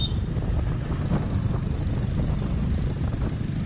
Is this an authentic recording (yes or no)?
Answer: yes